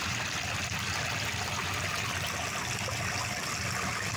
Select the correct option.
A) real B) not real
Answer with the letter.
A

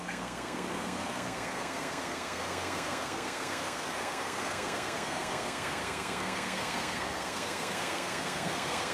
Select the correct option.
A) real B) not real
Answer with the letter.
B